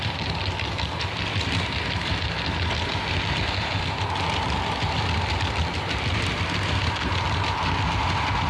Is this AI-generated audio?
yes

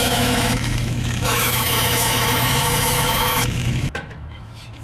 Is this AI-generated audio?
yes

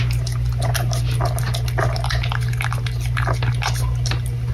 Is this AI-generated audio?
no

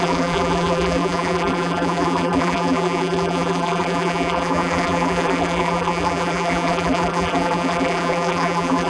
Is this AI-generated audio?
yes